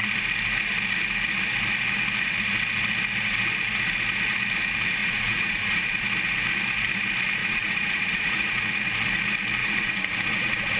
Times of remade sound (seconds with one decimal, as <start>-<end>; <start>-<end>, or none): 5.0-6.0; 7.4-8.7; 9.6-10.8